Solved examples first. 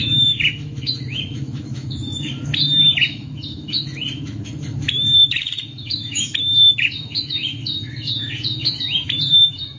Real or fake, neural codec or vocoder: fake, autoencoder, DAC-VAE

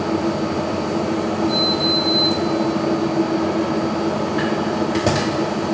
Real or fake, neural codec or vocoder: real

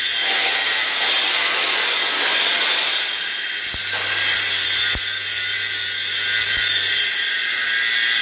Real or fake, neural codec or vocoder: real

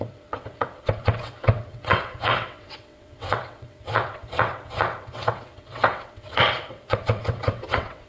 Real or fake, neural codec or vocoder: fake, vocoder, WaveNeXt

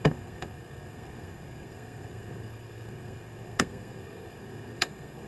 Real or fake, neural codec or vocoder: fake, codec, SNAC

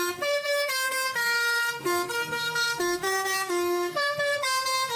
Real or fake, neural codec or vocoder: fake, codec, SNAC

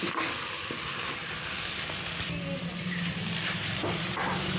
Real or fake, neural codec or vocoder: real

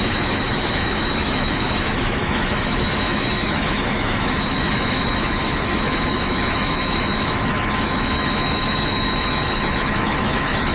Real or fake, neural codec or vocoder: fake, autoencoder, DAC-VAE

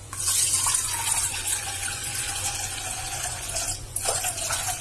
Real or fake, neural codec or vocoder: fake, vocoder, Vocos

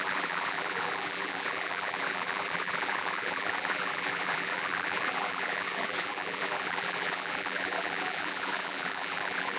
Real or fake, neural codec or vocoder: fake, vocoder, BigVGAN v2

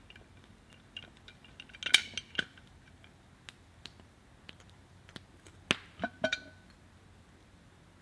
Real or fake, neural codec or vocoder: real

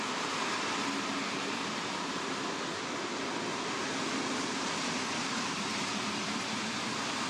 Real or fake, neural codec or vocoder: real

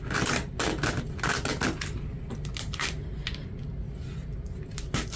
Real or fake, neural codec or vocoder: real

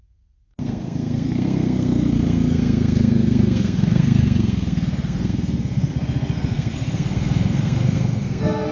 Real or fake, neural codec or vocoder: fake, codec, SNAC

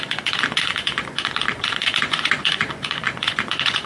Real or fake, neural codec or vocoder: fake, vocoder, Vocos